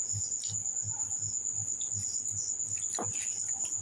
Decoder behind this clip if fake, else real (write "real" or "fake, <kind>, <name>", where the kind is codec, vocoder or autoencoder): real